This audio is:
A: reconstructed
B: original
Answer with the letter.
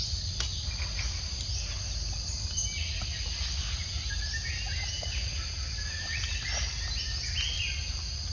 B